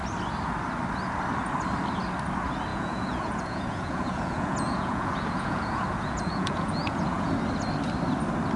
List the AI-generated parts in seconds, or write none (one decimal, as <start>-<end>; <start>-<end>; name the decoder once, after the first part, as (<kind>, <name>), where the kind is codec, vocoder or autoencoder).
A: 2.7-7.3 (vocoder, Vocos)